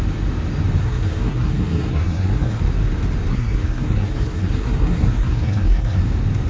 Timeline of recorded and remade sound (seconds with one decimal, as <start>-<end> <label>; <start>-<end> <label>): 0.0-0.8 recorded; 0.8-2.6 remade; 2.6-3.3 recorded; 3.3-6.1 remade; 6.1-6.5 recorded